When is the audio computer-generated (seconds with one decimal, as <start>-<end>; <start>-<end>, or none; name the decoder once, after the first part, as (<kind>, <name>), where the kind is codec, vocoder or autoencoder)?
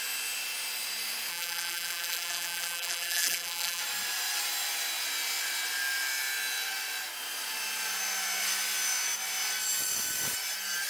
1.3-3.8 (vocoder, BigVGAN v2)